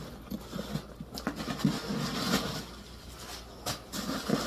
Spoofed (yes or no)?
no